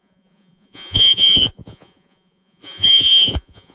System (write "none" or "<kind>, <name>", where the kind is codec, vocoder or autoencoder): vocoder, Vocos